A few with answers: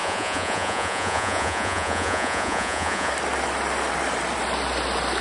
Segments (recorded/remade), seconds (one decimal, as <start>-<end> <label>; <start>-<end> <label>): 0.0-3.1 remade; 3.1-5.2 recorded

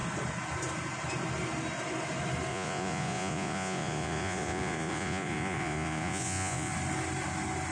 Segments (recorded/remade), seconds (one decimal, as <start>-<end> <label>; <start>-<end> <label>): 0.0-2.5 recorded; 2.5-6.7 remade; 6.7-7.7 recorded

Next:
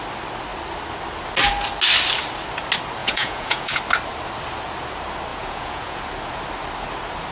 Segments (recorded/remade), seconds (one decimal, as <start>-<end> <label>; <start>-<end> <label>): 0.0-3.0 recorded; 3.0-3.8 remade; 3.8-5.3 recorded; 5.3-6.0 remade; 6.0-7.3 recorded

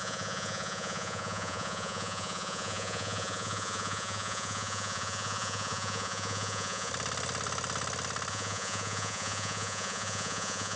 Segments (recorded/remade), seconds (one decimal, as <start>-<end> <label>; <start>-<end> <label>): 0.0-6.9 remade; 6.9-8.3 recorded; 8.3-10.8 remade

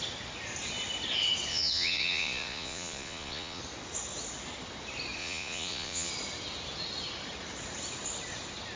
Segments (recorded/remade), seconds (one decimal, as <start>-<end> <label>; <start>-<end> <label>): 0.0-1.5 recorded; 1.5-3.6 remade; 3.6-5.2 recorded; 5.2-6.1 remade; 6.1-8.8 recorded

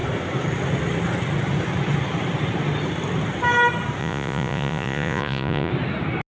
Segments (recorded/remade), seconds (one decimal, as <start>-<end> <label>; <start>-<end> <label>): 0.0-4.0 recorded; 4.0-5.7 remade; 5.7-6.3 recorded